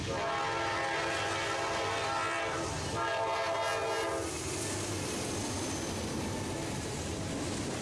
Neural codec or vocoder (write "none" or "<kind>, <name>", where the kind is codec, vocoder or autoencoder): none